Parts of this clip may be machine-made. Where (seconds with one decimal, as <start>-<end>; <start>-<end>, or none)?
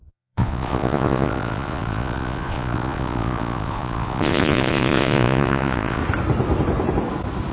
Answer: 0.0-6.0